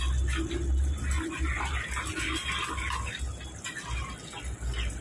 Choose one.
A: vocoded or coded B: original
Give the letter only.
B